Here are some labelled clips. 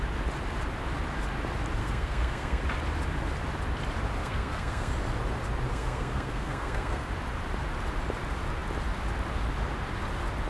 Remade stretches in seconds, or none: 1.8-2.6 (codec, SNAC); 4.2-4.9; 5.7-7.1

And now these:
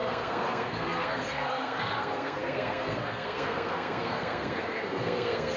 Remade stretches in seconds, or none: 0.0-5.6 (codec, SNAC)

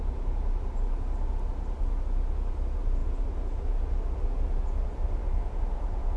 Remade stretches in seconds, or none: none

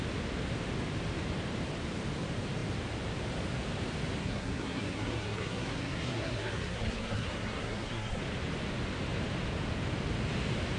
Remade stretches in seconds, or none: 4.2-8.2 (codec, SNAC)

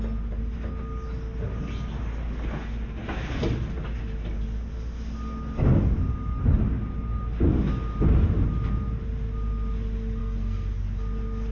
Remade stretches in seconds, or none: 10.2-10.7 (codec, SNAC)

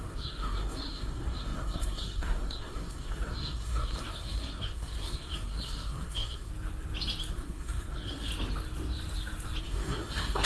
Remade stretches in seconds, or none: 0.0-6.5 (codec, SNAC); 7.3-8.3; 9.6-10.4